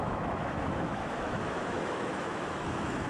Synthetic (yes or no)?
yes